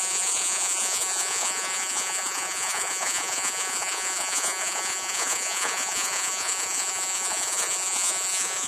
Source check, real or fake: fake